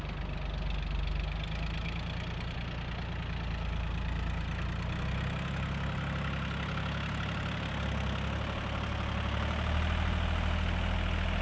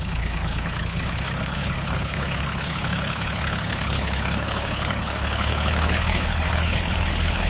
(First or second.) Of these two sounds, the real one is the first